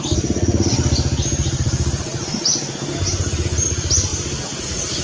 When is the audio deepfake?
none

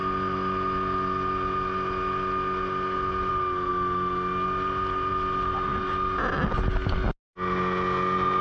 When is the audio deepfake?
none

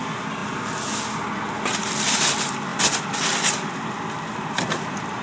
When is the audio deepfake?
none

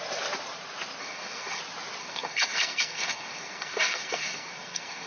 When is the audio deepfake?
1.0-1.6 (codec, SNAC); 2.0-5.1

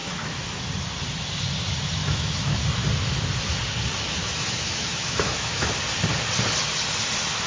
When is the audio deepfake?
0.0-0.6 (autoencoder, DAC-VAE); 2.0-2.6; 4.2-5.7

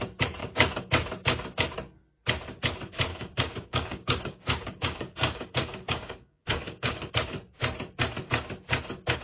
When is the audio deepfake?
0.4-0.9 (codec, DAC); 3.1-7.1